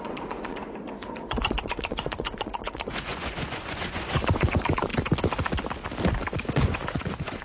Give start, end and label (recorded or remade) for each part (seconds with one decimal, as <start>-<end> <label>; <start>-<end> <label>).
0.0-4.9 remade; 4.9-6.5 recorded; 6.5-7.4 remade